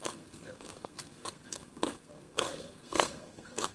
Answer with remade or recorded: remade